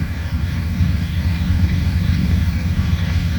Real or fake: fake